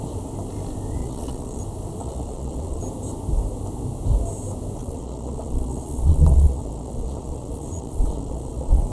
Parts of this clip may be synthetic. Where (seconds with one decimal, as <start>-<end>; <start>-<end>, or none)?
1.0-1.6; 2.0-2.8; 4.8-8.9